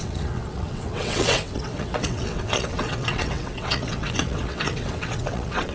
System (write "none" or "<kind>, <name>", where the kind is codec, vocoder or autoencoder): vocoder, WaveNeXt